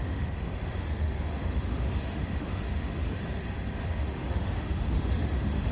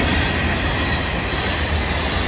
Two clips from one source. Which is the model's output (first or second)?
first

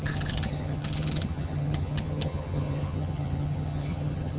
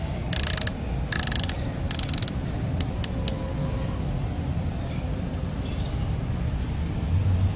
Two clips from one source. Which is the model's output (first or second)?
first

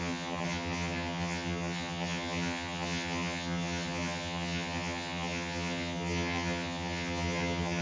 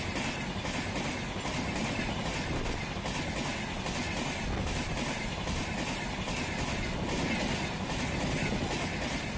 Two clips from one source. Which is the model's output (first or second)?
first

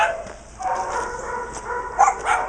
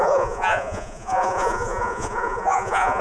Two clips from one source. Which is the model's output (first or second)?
second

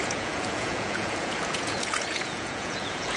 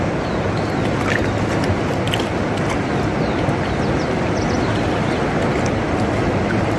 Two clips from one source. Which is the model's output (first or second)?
first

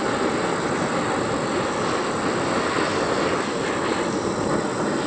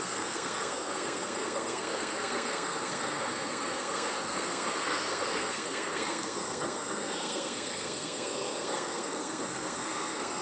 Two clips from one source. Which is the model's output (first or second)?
second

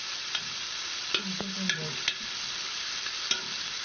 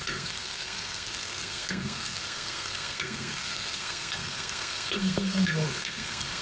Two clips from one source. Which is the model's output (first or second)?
second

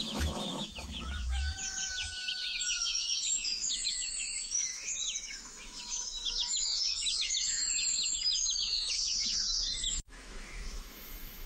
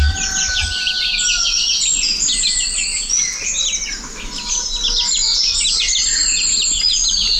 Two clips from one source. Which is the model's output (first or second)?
first